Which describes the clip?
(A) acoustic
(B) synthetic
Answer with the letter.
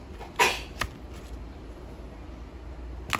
A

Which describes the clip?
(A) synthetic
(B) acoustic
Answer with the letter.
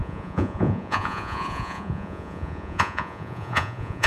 A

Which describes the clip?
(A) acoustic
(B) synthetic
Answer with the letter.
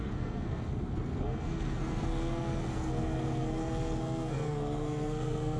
B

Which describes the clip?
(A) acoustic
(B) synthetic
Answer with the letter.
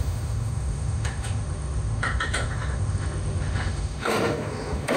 B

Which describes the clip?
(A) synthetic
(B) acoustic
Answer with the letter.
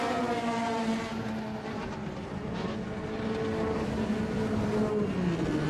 B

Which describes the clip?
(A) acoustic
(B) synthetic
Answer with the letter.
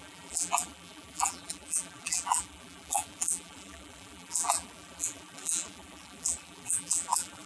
B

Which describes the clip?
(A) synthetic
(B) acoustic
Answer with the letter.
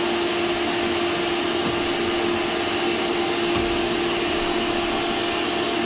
B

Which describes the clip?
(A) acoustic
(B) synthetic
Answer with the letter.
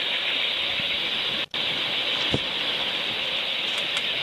A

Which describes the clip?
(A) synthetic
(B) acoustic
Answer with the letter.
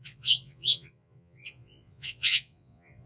A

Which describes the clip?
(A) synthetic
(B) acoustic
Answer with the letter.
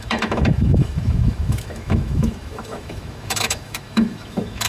A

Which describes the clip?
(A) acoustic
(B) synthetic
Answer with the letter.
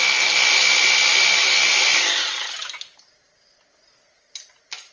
A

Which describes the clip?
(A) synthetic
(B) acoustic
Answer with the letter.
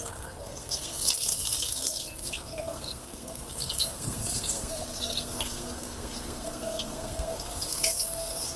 A